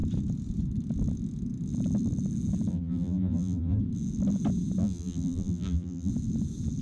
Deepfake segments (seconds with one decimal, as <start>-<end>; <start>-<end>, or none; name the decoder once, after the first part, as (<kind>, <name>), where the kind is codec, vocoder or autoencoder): 2.7-3.8 (vocoder, BigVGAN v2); 4.8-6.1

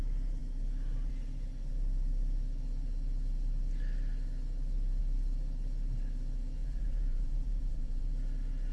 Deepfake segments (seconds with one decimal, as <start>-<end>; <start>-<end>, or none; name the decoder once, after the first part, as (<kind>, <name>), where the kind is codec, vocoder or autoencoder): 6.6-8.0 (vocoder, Vocos)

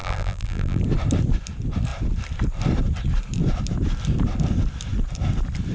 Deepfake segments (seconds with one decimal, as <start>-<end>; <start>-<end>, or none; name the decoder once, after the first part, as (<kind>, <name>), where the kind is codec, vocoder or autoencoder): 0.0-0.8 (vocoder, BigVGAN v2)

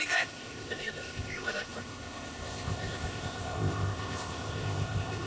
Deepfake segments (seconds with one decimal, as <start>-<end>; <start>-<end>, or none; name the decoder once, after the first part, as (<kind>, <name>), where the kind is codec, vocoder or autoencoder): 0.0-5.3 (codec, ZipCodec)